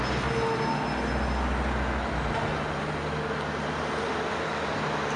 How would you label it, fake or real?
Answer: real